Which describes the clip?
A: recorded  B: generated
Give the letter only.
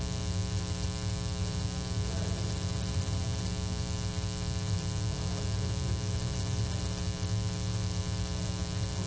A